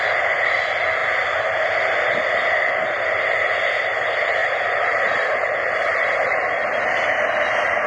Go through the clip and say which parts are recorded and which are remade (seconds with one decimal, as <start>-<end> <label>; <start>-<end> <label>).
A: 0.0-4.4 recorded; 4.4-6.4 remade; 6.4-7.9 recorded